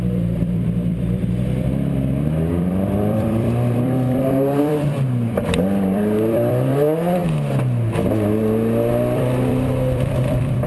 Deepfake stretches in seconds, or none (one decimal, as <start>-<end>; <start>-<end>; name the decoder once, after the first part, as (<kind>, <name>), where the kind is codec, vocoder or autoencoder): 0.0-7.2 (vocoder, BigVGAN v2); 8.9-10.7